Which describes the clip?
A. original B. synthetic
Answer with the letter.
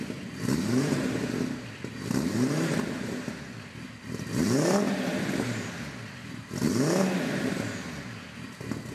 A